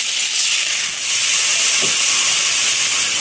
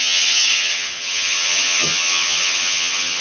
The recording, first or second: first